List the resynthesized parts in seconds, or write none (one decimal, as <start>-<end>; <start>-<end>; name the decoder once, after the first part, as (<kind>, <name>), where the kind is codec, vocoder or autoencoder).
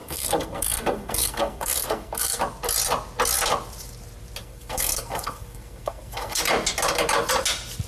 0.0-2.4 (codec, SNAC); 4.4-6.4